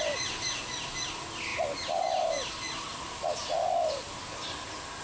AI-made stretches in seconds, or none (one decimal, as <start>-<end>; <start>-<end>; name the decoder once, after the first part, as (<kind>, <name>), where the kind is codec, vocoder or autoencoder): none